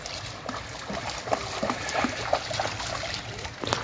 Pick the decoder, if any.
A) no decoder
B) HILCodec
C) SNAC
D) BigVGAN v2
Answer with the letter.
A